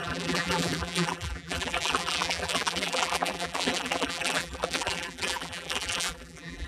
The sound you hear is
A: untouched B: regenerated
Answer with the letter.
B